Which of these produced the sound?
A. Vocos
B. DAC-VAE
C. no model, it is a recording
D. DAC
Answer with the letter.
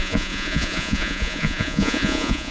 A